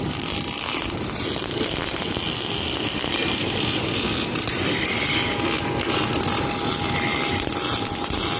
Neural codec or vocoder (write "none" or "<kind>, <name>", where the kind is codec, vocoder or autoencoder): none